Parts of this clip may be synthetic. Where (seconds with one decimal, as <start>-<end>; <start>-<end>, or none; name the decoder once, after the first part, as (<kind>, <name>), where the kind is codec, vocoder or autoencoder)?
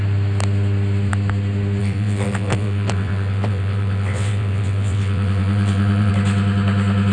1.8-6.1 (vocoder, WaveNeXt)